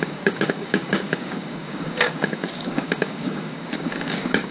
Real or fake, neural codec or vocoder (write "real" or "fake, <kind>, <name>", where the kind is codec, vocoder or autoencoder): fake, codec, DAC